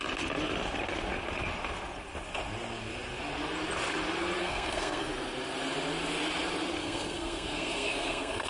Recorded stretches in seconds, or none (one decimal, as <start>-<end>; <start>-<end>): 0.0-4.4; 5.1-6.8